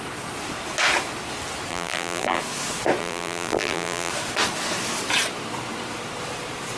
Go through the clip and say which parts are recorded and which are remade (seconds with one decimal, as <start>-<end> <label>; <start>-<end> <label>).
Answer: 0.0-1.7 recorded; 1.7-2.4 remade; 2.4-3.0 recorded; 3.0-4.1 remade; 4.1-6.8 recorded